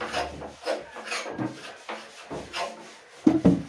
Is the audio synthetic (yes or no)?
no